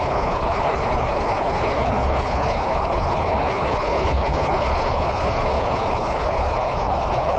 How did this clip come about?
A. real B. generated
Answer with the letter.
B